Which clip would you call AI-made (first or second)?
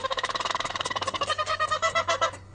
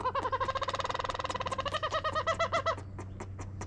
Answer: first